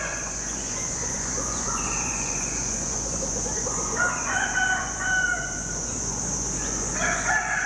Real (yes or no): no